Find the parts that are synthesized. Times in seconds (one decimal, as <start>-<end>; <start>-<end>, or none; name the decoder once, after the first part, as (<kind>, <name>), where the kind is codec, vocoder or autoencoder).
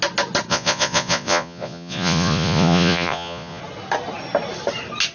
0.5-3.6 (vocoder, Vocos)